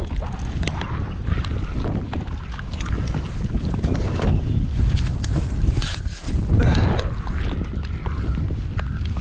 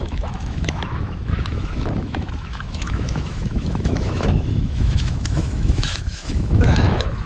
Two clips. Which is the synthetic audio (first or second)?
second